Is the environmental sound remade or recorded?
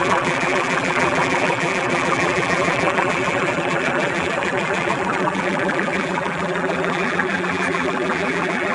remade